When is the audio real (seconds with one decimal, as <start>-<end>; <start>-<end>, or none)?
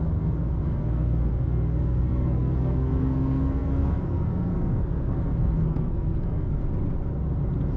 6.6-7.8